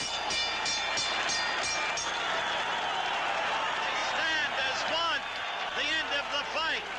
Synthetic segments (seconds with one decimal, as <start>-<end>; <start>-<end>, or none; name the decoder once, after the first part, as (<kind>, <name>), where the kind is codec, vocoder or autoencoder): none